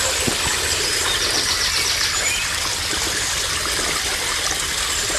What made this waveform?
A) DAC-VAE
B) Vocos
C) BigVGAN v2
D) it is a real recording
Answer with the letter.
D